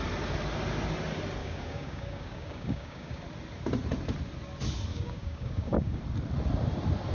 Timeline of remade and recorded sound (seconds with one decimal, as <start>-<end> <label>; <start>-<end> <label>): 0.0-1.4 recorded; 1.4-3.2 remade; 3.2-4.9 recorded; 4.9-6.0 remade; 6.0-7.1 recorded